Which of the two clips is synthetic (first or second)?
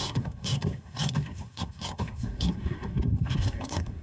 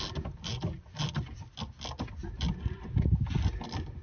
first